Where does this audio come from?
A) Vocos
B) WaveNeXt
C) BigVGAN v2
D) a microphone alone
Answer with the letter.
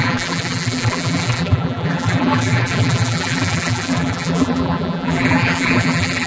C